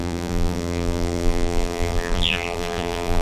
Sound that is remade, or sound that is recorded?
remade